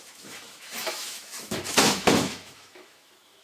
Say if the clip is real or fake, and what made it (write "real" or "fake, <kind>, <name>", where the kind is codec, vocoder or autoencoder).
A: fake, autoencoder, DAC-VAE